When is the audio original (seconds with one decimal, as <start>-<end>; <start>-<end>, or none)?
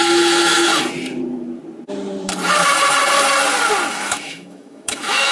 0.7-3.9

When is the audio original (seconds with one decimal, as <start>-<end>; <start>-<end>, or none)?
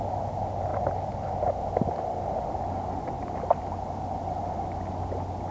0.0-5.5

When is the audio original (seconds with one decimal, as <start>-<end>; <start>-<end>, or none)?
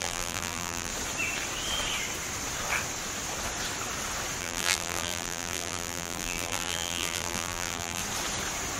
0.9-4.4; 8.0-8.8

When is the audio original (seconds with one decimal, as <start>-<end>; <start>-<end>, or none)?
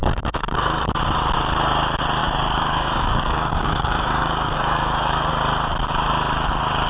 0.9-2.2; 5.3-6.9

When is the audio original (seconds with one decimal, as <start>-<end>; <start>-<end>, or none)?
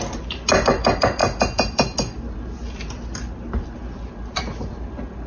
0.0-5.3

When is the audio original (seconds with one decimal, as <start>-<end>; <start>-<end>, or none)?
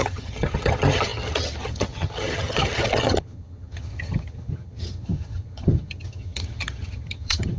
none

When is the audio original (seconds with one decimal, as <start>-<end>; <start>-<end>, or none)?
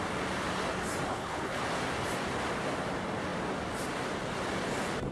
0.0-1.1; 1.6-5.1